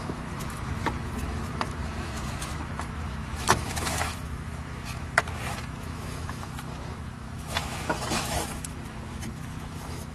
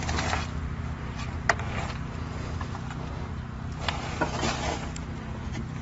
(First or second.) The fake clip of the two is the first